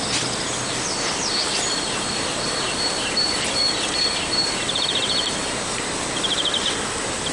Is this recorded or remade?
recorded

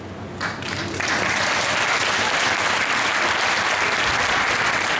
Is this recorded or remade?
recorded